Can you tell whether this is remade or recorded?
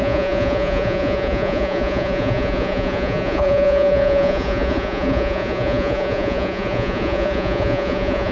remade